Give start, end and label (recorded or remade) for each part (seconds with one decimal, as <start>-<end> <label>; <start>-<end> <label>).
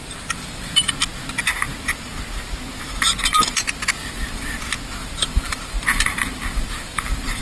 0.0-0.9 remade; 0.9-4.0 recorded; 4.0-4.6 remade; 4.6-5.0 recorded; 5.0-7.4 remade